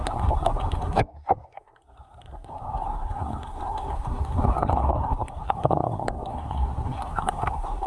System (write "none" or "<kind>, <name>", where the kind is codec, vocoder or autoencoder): codec, SNAC